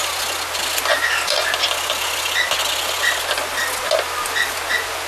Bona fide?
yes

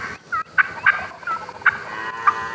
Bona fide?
yes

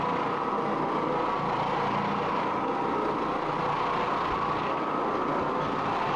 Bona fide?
yes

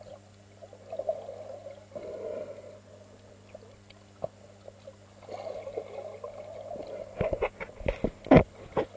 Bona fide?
yes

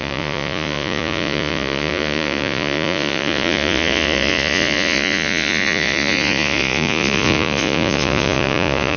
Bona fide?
no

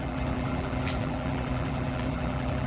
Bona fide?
no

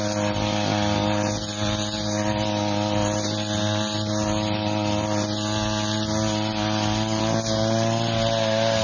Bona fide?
yes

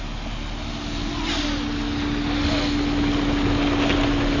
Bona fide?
yes